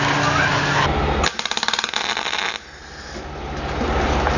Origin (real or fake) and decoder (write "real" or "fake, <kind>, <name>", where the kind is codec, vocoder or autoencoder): real